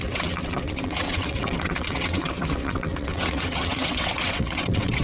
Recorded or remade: remade